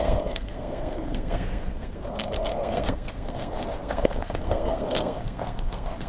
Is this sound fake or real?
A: fake